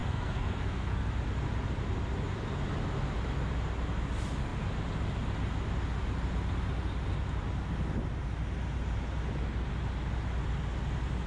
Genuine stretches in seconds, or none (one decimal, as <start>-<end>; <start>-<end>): 1.1-11.3